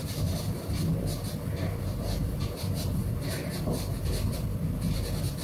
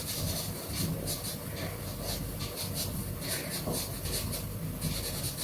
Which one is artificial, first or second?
first